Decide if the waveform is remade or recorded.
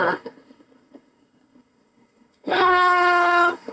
remade